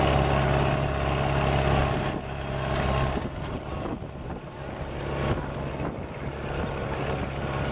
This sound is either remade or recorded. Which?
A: recorded